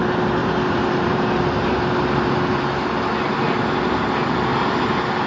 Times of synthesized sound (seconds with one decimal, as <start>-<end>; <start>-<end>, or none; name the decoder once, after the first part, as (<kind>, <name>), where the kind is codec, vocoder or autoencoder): 0.4-1.8 (vocoder, BigVGAN v2)